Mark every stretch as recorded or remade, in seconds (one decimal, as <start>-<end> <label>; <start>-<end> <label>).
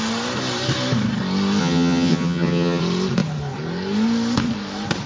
0.0-1.6 recorded; 1.6-2.8 remade; 2.8-5.1 recorded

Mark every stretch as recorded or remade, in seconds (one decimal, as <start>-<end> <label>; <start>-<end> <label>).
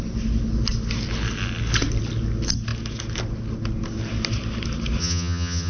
0.0-5.0 recorded; 5.0-5.7 remade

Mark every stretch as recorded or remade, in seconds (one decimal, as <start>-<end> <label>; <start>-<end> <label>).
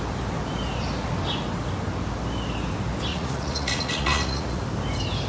0.0-3.1 recorded; 3.1-4.6 remade; 4.6-5.3 recorded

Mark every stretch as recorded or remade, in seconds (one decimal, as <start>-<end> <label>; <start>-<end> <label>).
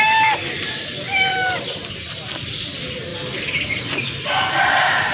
0.0-1.3 recorded; 1.3-2.3 remade; 2.3-5.1 recorded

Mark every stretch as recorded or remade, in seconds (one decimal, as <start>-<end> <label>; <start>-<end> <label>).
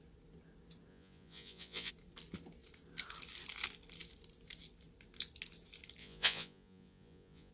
0.0-0.9 recorded; 0.9-1.9 remade; 1.9-6.0 recorded; 6.0-7.5 remade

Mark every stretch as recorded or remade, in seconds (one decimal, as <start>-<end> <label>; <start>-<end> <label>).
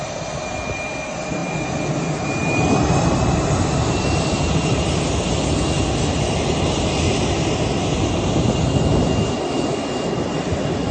0.0-10.9 recorded